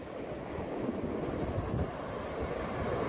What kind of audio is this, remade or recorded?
recorded